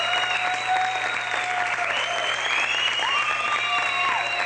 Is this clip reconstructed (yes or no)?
yes